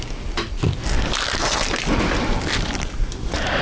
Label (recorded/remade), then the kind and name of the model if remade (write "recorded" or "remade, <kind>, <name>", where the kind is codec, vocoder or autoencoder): recorded